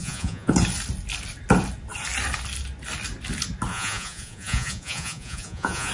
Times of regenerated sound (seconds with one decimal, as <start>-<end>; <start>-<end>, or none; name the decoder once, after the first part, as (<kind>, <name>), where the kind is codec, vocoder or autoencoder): 0.0-0.5 (vocoder, Vocos); 3.7-5.9